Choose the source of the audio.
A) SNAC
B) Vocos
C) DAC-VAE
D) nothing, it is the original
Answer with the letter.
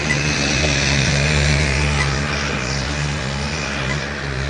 B